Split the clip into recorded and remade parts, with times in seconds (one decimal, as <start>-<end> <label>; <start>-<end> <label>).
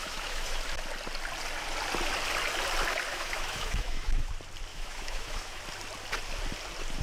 0.0-0.6 remade; 0.6-3.1 recorded; 3.1-4.3 remade; 4.3-4.7 recorded; 4.7-5.6 remade; 5.6-7.0 recorded